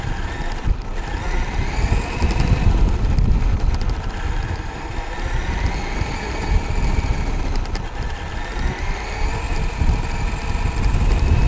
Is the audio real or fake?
real